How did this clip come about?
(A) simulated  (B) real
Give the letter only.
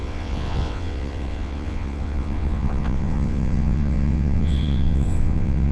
A